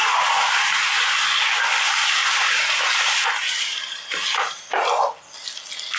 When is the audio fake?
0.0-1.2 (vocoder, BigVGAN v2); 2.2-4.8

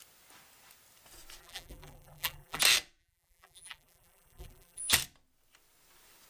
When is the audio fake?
1.4-2.6 (vocoder, BigVGAN v2); 3.0-4.8